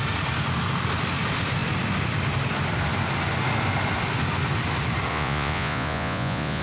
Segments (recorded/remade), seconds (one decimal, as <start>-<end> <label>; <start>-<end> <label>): 0.0-5.1 recorded; 5.1-6.6 remade